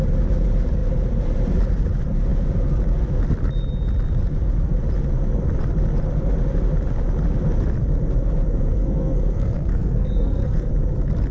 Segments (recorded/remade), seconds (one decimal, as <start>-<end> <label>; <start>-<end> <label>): 0.0-8.7 recorded; 8.7-10.7 remade; 10.7-11.3 recorded